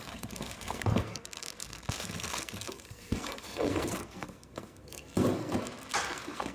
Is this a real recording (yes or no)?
no